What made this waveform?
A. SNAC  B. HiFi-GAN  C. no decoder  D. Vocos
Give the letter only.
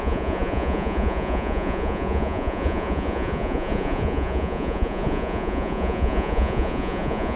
D